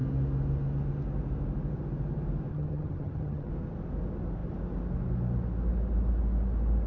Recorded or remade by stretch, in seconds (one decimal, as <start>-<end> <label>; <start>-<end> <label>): 0.0-2.5 recorded; 2.5-3.5 remade; 3.5-6.9 recorded